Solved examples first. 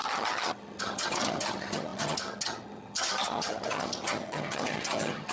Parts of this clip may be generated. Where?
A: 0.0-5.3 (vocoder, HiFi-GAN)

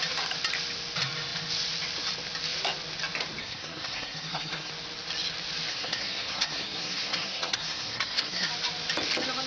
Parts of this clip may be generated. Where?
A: 3.4-4.7 (codec, SNAC); 5.7-8.5

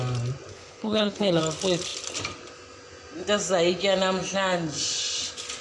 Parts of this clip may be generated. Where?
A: 0.5-1.4 (codec, HILCodec)